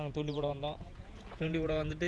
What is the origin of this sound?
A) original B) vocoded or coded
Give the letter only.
B